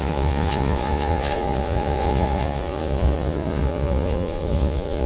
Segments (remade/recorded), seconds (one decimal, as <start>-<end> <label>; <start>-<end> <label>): 0.0-5.1 remade